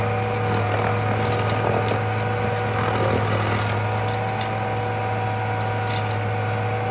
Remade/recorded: recorded